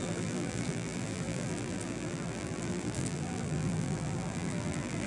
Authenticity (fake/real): fake